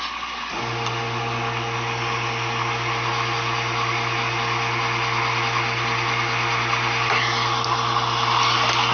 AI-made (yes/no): no